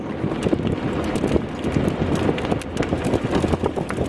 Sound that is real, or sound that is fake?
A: real